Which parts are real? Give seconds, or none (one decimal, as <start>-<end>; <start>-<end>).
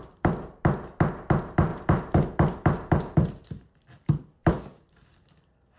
none